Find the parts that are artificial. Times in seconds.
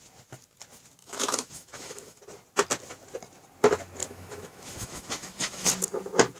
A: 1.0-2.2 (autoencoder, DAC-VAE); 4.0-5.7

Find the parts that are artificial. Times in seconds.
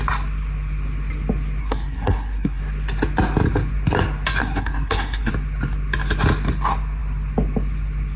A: 1.6-2.6 (codec, SNAC); 4.4-5.3